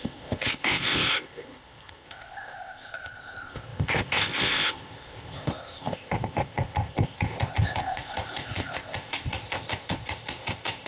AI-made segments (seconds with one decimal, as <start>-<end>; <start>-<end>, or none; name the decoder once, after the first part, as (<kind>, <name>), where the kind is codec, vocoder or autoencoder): 0.0-10.9 (codec, ZipCodec)